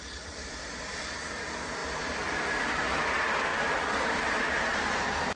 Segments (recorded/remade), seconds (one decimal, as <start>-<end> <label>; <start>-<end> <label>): 0.0-5.4 recorded